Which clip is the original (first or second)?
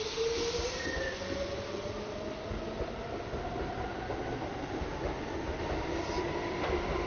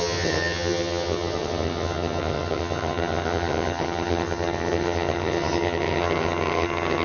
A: first